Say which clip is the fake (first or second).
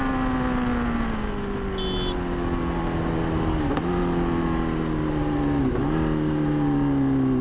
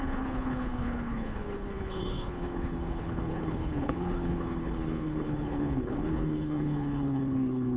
second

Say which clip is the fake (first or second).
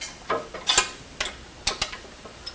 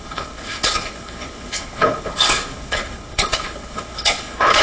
second